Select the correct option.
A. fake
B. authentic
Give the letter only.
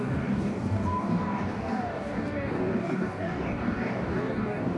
A